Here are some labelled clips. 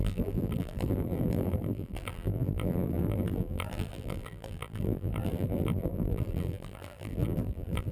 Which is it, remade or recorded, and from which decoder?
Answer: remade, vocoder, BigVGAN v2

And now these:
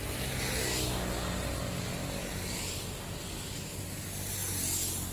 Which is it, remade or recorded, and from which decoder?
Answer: recorded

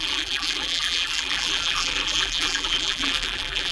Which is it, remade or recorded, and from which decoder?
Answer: remade, vocoder, BigVGAN v2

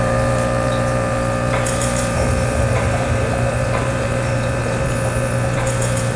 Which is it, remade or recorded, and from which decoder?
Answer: remade, vocoder, BigVGAN v2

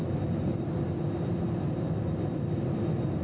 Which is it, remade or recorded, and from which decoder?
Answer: recorded